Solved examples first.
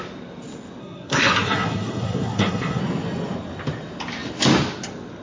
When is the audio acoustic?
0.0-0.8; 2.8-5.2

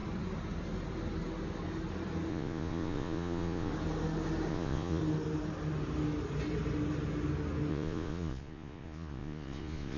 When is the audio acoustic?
0.0-2.3; 3.7-4.5; 5.0-7.7

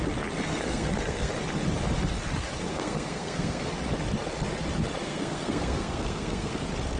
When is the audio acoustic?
0.0-0.7; 1.3-2.7; 3.7-5.0; 6.6-7.0

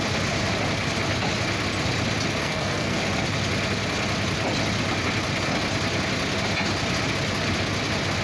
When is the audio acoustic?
0.0-2.4; 3.0-8.2

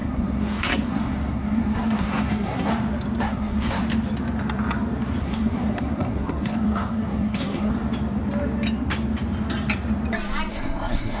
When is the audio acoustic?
2.7-3.2; 3.8-5.2; 7.7-10.5